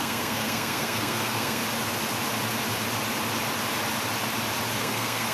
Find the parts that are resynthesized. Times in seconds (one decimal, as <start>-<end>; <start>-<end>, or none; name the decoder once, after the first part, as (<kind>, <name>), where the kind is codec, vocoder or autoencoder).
0.0-1.6 (codec, SNAC); 4.8-5.3